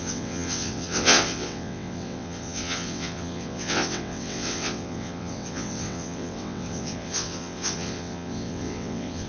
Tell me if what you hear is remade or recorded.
remade